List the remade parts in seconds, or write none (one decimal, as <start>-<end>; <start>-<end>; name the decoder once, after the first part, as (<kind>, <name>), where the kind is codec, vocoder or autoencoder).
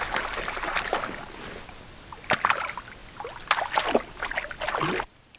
none